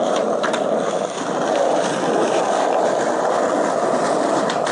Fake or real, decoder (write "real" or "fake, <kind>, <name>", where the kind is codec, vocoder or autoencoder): real